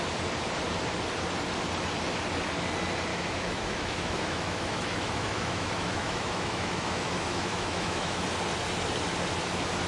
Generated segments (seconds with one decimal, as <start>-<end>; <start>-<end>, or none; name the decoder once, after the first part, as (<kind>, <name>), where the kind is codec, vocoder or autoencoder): 3.1-8.2 (autoencoder, DAC-VAE)